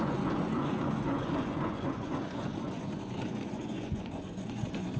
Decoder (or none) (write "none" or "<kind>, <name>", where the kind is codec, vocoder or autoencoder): vocoder, Vocos